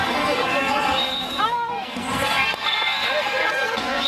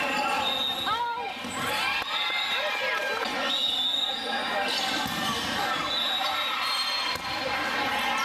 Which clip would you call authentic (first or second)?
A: second